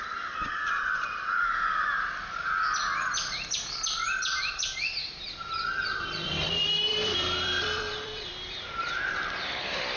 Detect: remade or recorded remade